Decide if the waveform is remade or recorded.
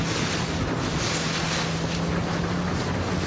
recorded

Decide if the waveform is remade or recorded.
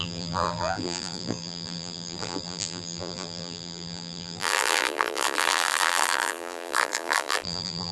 remade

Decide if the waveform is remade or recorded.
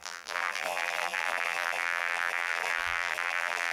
remade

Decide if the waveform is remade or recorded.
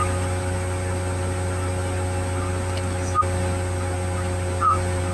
recorded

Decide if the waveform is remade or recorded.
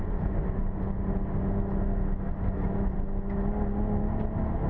recorded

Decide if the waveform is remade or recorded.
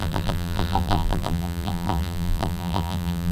remade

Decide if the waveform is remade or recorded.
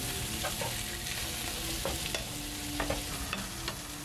recorded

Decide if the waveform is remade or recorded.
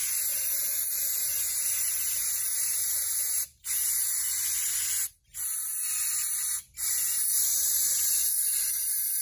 recorded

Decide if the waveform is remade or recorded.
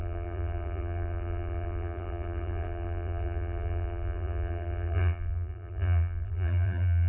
remade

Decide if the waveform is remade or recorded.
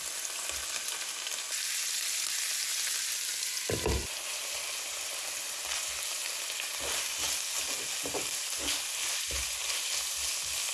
recorded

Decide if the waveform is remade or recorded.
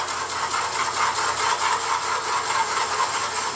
recorded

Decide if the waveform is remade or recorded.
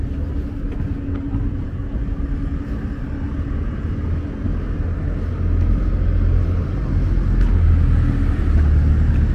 recorded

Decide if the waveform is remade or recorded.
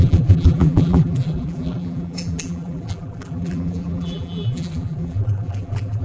remade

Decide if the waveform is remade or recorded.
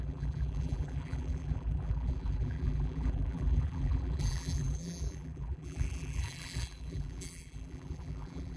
remade